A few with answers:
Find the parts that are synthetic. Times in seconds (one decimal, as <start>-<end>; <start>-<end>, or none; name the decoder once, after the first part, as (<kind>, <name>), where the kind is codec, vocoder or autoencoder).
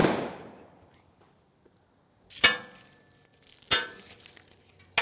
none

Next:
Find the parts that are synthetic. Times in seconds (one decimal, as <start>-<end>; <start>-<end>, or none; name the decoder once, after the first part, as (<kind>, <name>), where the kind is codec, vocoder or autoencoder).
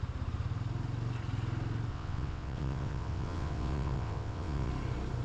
1.9-4.7 (vocoder, WaveNeXt)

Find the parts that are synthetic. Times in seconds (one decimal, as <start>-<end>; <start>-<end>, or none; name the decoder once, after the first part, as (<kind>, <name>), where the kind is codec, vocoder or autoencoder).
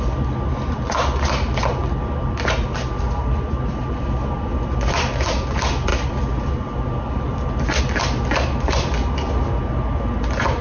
none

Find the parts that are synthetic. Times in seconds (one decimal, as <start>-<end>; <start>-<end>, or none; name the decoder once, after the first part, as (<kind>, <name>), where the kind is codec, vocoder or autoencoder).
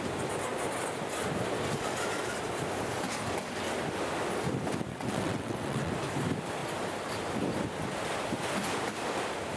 4.9-5.9 (vocoder, WaveNeXt)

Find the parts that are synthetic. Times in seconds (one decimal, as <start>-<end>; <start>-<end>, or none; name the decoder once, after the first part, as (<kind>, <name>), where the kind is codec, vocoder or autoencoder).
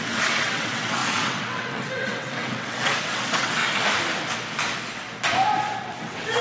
0.0-3.6 (vocoder, WaveNeXt); 5.8-6.4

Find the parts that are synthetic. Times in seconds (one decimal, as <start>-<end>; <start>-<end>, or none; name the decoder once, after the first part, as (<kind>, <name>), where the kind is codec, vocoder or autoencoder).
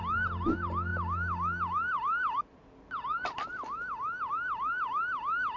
none